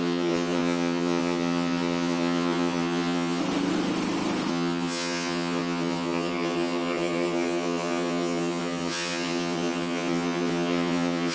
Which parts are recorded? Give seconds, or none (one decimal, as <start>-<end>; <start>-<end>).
3.4-4.5